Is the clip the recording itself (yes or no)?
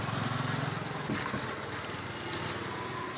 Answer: yes